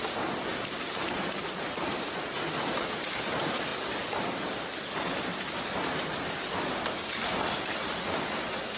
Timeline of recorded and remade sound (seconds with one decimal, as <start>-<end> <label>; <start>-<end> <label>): 0.0-0.5 recorded; 0.5-2.2 remade; 2.2-8.8 recorded